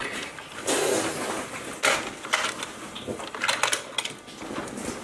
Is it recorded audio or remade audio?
recorded